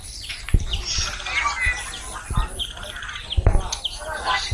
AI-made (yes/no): no